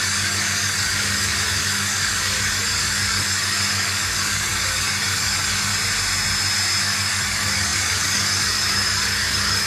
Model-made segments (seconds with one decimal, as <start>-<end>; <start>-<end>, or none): 0.0-5.7; 6.8-9.7